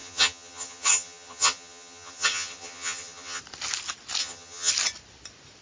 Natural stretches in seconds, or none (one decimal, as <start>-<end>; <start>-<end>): 3.4-4.2; 4.7-5.6